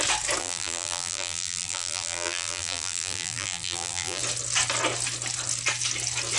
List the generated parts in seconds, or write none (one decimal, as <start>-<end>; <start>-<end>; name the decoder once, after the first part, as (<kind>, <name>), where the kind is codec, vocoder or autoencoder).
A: 0.4-4.2 (vocoder, BigVGAN v2)